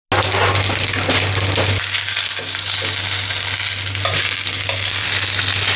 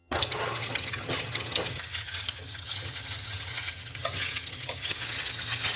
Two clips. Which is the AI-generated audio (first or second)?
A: second